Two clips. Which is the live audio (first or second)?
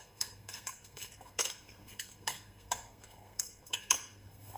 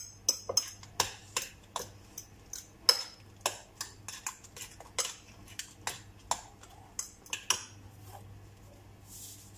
second